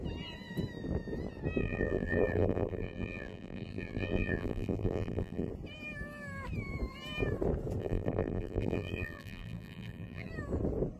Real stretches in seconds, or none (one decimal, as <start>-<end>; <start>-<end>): 0.0-1.6; 5.5-7.8; 10.3-11.0